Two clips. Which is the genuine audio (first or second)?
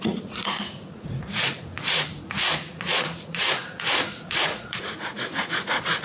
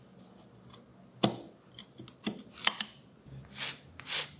second